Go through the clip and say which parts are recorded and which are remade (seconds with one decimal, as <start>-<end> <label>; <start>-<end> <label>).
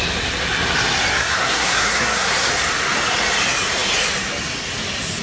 0.0-1.1 recorded; 1.1-2.5 remade; 2.5-5.2 recorded